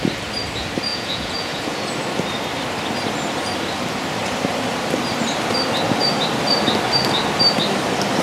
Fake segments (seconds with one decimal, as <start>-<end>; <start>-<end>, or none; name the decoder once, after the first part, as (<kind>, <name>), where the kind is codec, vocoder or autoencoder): 0.9-1.8 (vocoder, Vocos)